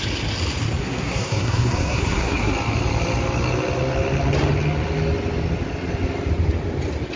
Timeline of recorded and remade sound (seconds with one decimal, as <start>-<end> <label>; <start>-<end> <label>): 0.0-0.8 recorded; 0.8-2.5 remade; 2.5-7.2 recorded